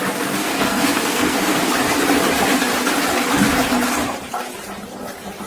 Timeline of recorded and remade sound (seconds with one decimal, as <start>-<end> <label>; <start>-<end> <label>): 0.0-0.4 recorded; 0.4-1.6 remade; 1.6-5.5 recorded